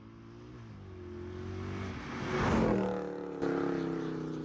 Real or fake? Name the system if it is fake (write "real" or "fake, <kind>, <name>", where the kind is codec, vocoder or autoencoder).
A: real